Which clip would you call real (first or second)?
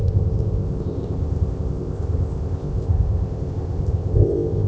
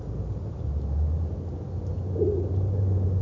second